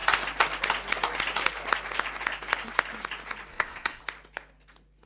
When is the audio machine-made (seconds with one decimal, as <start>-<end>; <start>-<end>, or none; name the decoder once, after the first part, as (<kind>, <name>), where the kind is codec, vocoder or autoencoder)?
3.5-4.0 (codec, ZipCodec)